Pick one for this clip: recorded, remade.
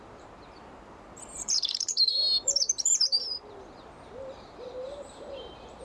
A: remade